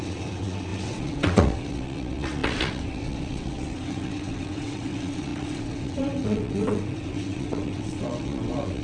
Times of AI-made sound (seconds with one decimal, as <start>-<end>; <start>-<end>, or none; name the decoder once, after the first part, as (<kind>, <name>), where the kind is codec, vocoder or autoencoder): 0.0-8.8 (vocoder, WaveNeXt)